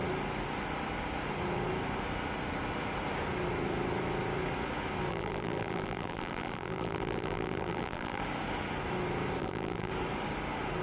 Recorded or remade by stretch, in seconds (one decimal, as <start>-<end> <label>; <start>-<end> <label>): 0.0-5.1 recorded; 5.1-8.2 remade; 8.2-9.4 recorded; 9.4-9.9 remade; 9.9-10.8 recorded